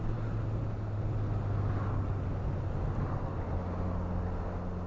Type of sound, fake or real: real